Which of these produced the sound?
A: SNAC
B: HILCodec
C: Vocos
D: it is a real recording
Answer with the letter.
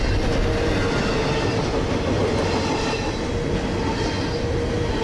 D